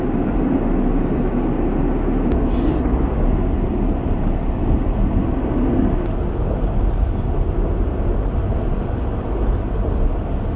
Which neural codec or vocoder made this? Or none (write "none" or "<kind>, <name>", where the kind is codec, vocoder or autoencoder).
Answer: none